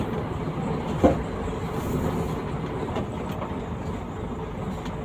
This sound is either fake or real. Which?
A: real